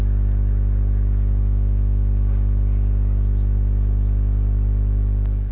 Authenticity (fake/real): real